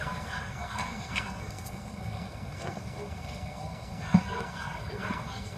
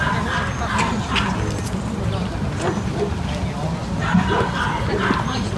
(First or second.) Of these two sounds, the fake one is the first